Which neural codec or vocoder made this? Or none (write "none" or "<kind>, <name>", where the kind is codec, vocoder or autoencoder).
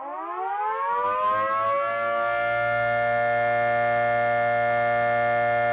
none